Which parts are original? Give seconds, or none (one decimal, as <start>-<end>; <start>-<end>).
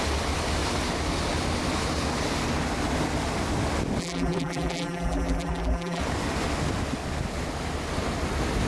0.0-4.0; 6.0-8.7